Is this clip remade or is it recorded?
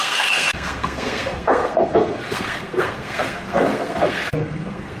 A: remade